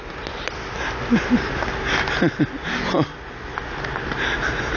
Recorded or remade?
recorded